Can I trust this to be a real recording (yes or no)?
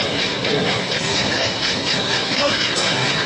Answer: no